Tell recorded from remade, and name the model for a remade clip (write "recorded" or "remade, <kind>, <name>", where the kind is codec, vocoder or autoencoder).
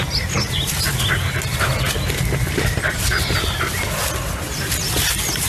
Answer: recorded